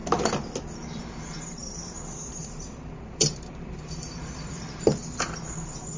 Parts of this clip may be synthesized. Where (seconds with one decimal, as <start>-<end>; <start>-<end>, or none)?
1.0-6.0